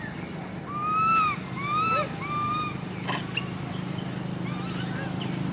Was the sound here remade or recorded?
recorded